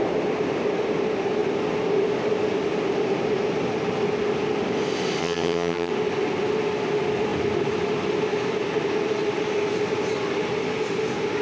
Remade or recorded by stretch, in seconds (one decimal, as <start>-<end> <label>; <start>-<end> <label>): 0.0-5.2 recorded; 5.2-5.9 remade; 5.9-11.4 recorded